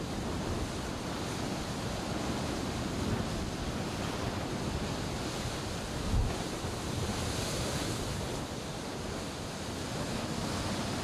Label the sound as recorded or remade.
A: recorded